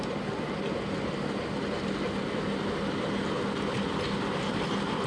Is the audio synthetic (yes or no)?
no